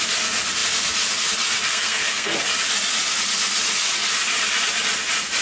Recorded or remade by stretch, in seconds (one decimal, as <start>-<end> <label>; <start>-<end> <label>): 0.0-1.7 recorded; 1.7-2.4 remade; 2.4-5.4 recorded